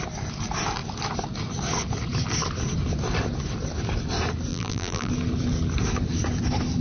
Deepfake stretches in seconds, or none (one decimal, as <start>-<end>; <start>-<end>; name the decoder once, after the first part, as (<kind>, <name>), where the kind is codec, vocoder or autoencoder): 4.5-5.1 (vocoder, BigVGAN v2)